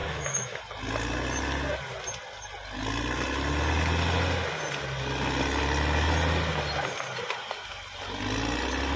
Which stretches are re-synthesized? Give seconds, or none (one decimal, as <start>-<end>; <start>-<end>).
0.0-0.6